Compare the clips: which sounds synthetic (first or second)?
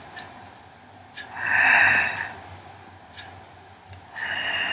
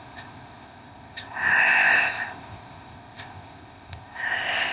second